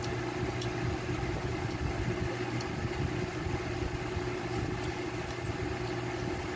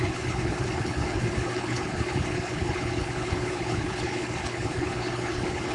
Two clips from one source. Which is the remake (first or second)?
second